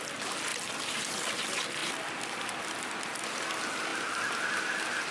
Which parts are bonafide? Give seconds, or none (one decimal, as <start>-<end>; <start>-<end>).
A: 0.0-5.1